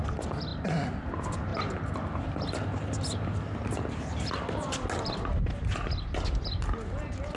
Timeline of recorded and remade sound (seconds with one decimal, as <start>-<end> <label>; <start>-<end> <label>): 0.0-7.4 recorded